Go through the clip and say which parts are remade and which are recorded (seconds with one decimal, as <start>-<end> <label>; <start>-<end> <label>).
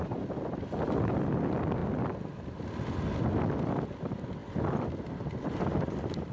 0.0-6.3 recorded